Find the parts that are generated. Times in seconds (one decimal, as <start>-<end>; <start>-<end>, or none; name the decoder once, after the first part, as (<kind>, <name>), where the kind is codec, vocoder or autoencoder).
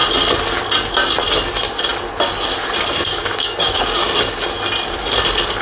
2.9-4.0 (codec, DAC)